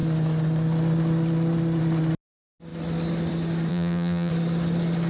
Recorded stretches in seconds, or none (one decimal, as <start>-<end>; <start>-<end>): 0.0-3.7; 4.3-5.1

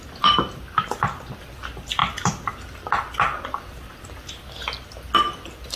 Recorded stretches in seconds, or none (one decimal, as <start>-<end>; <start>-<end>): 0.0-5.8